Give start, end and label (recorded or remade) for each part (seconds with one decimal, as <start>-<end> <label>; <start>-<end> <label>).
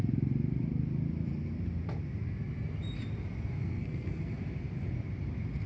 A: 0.0-3.6 recorded; 3.6-4.4 remade; 4.4-5.7 recorded